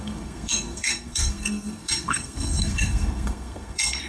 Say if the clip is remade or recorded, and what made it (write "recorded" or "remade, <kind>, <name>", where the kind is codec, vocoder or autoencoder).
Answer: remade, codec, SNAC